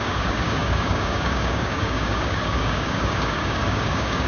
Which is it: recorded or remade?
remade